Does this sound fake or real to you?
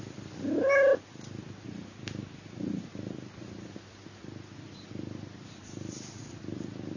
real